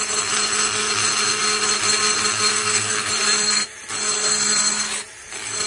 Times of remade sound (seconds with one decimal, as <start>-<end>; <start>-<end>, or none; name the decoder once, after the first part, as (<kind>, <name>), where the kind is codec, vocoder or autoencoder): 2.5-3.1 (codec, SNAC)